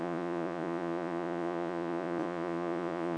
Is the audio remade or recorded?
remade